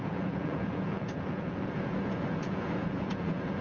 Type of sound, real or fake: fake